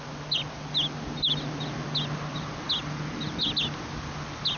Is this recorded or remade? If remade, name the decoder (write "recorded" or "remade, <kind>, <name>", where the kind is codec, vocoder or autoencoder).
recorded